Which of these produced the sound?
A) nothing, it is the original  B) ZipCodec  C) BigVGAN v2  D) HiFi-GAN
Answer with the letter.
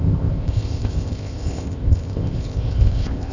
B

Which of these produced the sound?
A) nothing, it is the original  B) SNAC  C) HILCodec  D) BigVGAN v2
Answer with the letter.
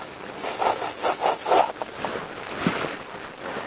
A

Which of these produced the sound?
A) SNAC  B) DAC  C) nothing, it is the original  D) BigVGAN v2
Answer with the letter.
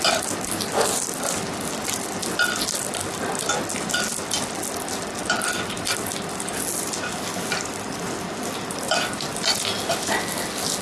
C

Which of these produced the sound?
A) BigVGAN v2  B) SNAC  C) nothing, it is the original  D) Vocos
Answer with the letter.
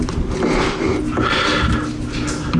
C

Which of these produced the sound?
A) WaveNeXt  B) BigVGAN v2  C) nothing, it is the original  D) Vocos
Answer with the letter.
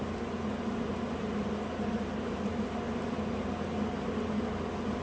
C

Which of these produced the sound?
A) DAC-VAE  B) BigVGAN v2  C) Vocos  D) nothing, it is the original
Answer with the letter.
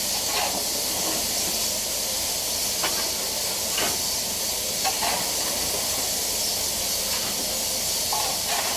D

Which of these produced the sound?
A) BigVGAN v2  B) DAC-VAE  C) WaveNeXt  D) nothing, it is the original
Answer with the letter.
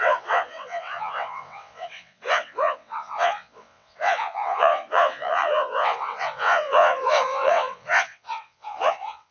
C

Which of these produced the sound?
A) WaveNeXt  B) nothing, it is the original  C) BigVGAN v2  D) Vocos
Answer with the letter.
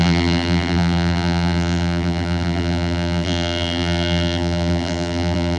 C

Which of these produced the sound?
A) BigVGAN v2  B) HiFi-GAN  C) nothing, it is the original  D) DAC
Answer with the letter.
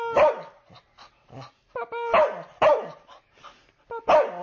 C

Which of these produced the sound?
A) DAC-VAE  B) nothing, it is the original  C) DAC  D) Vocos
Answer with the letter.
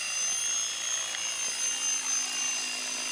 B